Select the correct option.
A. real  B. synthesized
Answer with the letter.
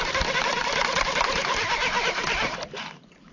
B